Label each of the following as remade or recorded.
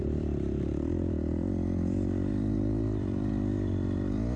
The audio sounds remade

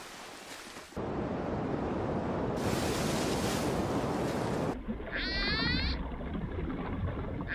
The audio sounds recorded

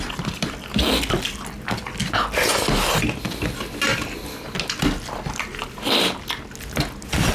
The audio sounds recorded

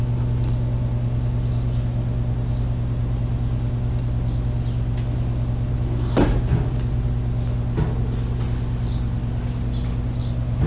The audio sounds recorded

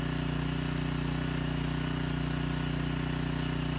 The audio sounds recorded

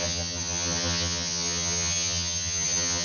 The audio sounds remade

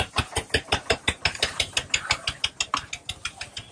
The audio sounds recorded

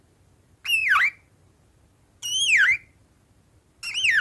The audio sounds recorded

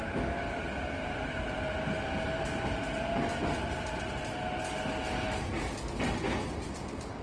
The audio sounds recorded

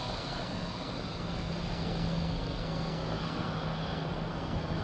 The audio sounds remade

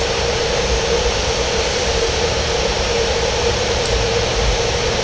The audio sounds remade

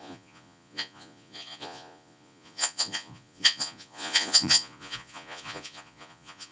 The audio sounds remade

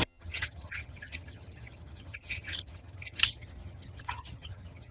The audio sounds remade